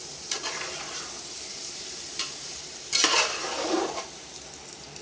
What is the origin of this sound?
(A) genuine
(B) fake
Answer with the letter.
B